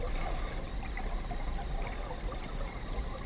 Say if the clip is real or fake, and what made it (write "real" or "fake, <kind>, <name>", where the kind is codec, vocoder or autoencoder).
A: real